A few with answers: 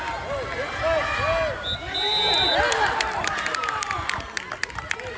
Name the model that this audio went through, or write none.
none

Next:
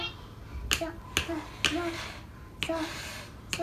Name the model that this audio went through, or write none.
none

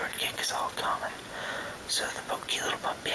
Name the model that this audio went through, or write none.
vocoder, Vocos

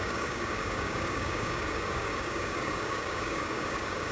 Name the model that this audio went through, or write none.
codec, DAC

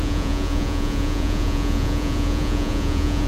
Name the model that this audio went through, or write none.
vocoder, Vocos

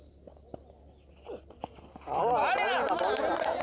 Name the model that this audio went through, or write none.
none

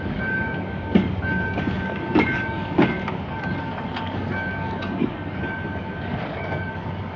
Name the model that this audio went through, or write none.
codec, DAC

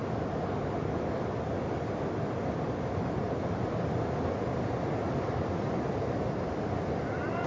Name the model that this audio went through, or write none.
none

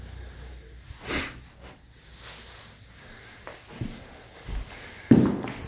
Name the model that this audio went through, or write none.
none